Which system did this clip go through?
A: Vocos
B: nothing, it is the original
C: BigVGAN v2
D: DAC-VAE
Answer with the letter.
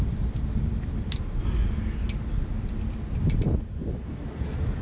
B